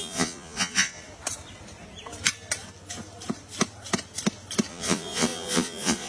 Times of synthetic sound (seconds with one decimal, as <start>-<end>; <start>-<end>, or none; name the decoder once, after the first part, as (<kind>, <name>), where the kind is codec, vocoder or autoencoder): 0.0-1.0 (vocoder, Vocos); 4.7-6.1